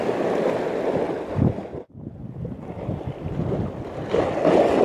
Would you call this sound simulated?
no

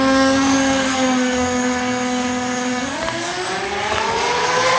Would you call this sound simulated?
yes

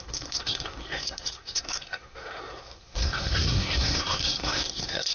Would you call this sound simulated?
yes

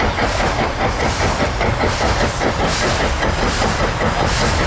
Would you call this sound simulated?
no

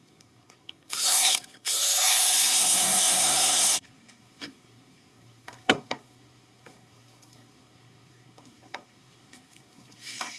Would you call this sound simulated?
yes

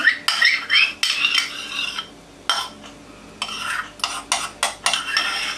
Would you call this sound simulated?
no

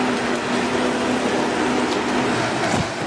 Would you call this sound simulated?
no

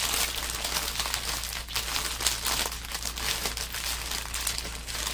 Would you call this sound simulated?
no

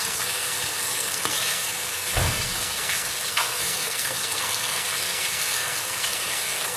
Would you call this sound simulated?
yes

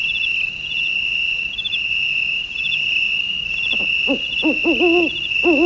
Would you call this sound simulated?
no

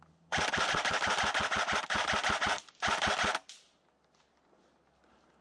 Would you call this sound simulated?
no